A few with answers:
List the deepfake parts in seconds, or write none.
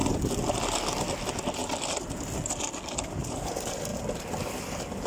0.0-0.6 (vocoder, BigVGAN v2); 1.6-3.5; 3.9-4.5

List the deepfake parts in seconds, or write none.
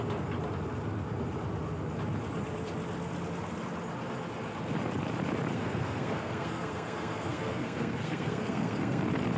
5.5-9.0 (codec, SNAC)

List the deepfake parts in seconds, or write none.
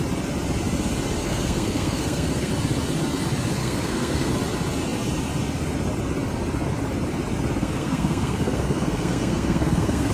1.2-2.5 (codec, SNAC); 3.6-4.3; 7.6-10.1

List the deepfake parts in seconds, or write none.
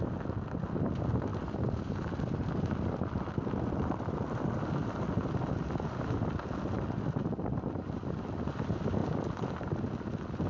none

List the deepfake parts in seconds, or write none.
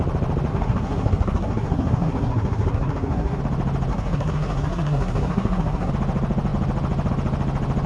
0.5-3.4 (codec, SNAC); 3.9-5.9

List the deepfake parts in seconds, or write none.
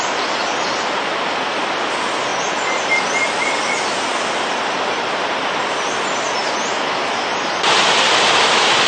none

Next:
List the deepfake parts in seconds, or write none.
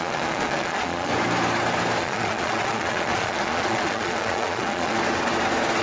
0.0-1.1 (vocoder, Vocos); 2.0-5.0